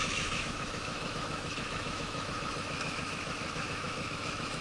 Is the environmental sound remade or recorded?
remade